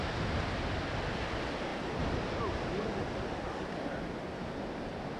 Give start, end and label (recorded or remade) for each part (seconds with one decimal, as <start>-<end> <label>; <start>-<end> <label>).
0.0-1.7 recorded; 1.7-2.4 remade; 2.4-5.2 recorded